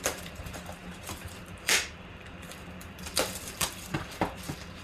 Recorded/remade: remade